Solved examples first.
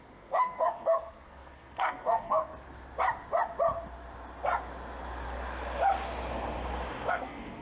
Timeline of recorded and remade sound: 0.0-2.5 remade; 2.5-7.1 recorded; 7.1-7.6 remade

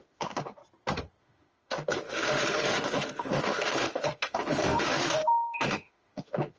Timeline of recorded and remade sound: 0.0-0.6 remade; 0.6-1.2 recorded; 1.2-6.6 remade

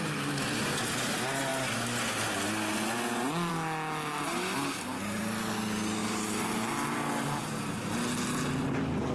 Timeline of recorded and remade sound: 0.0-9.1 recorded

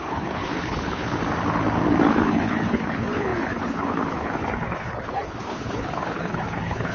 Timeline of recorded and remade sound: 0.0-1.2 remade; 1.2-2.1 recorded; 2.1-6.9 remade

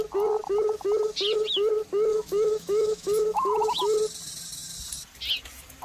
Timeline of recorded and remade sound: 0.0-2.1 recorded; 2.1-3.8 remade; 3.8-5.8 recorded

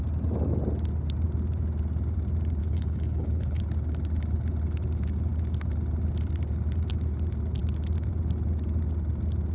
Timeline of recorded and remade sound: 0.0-2.6 recorded; 2.6-3.6 remade; 3.6-9.5 recorded